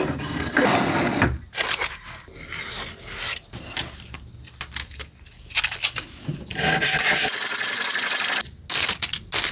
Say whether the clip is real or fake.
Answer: real